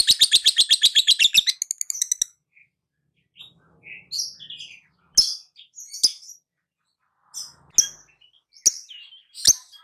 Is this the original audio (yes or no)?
yes